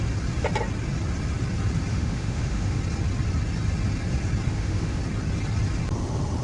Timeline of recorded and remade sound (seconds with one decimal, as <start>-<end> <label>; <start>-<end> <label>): 0.0-1.9 recorded; 1.9-2.8 remade; 2.8-4.5 recorded; 4.5-5.0 remade; 5.0-6.4 recorded